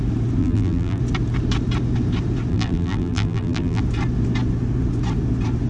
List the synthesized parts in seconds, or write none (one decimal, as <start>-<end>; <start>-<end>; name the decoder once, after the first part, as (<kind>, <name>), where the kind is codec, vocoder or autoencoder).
0.4-1.0 (vocoder, BigVGAN v2); 2.5-3.8